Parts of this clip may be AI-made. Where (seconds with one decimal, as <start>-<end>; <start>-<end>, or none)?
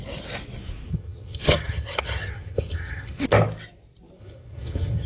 0.9-3.2; 4.2-5.1